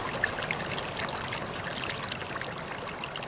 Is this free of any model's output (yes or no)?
yes